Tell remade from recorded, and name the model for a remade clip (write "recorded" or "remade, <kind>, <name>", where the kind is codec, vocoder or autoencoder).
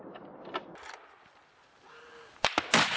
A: recorded